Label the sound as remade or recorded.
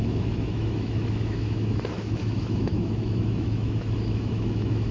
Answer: remade